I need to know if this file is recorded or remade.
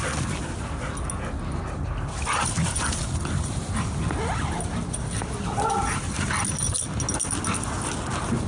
recorded